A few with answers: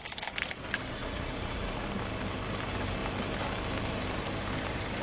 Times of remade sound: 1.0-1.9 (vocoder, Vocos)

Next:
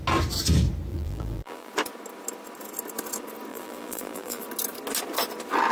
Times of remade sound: 0.9-1.7 (vocoder, BigVGAN v2); 3.5-4.4

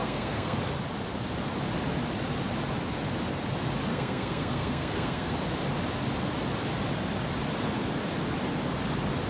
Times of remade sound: 0.0-0.6 (codec, SNAC); 3.9-5.3

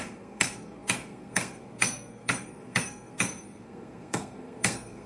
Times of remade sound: 0.0-5.1 (codec, SNAC)

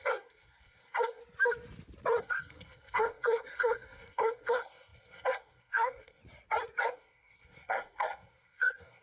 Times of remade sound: 0.0-1.2 (codec, SNAC); 2.2-6.2; 6.8-9.0

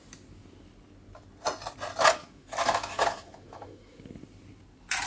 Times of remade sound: 2.2-4.0 (autoencoder, DAC-VAE)